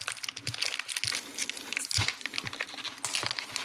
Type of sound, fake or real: real